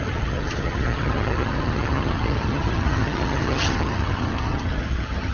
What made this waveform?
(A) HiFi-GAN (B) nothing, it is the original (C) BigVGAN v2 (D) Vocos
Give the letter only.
A